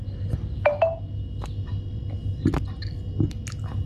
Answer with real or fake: real